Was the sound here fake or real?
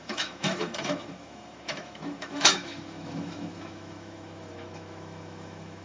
fake